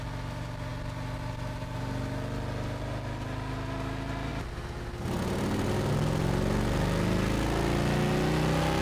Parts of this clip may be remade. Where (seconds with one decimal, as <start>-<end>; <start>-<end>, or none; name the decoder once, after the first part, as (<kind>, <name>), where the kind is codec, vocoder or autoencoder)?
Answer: none